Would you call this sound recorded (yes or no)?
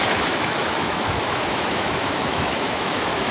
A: no